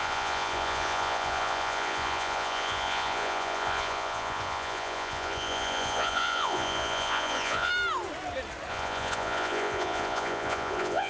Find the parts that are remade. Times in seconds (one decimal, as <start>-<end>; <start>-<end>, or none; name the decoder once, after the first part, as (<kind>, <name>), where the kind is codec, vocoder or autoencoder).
0.0-7.7 (vocoder, Vocos); 8.7-11.1